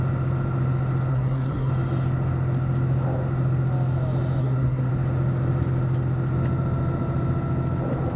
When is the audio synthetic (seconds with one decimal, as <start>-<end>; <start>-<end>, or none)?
1.1-1.7; 4.4-4.9